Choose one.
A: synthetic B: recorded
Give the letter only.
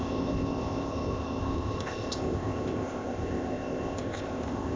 A